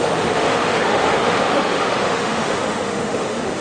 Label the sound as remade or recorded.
remade